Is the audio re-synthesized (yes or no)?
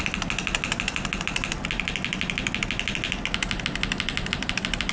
no